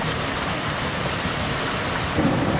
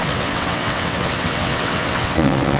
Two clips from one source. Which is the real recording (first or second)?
first